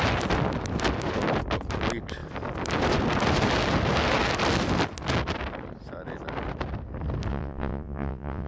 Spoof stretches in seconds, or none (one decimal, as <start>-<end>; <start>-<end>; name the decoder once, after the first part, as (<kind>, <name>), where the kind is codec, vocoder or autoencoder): 7.3-8.5 (vocoder, WaveNeXt)